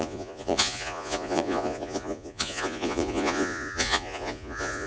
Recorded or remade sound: remade